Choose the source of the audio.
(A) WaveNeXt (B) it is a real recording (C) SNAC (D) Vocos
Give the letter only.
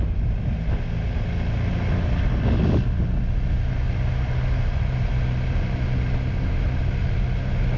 B